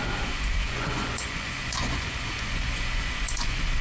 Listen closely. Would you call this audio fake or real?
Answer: fake